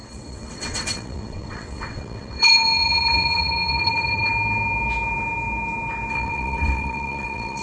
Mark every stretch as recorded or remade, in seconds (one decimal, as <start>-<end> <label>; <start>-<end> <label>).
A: 0.0-4.3 remade; 4.3-6.1 recorded; 6.1-7.6 remade